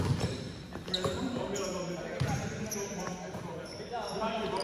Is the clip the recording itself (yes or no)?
yes